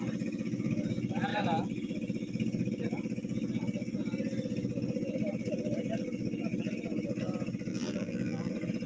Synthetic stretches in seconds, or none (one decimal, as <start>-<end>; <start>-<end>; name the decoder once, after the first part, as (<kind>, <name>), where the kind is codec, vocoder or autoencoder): 7.7-8.5 (vocoder, BigVGAN v2)